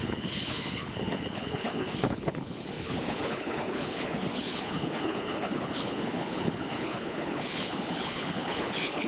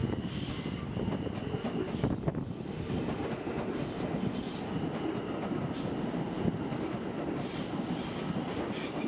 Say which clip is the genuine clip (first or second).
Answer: second